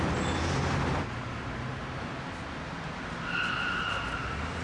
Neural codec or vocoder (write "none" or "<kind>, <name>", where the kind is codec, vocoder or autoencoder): none